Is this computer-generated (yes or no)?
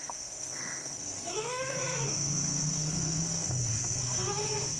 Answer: yes